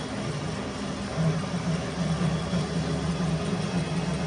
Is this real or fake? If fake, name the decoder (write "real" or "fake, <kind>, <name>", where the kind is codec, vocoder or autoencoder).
real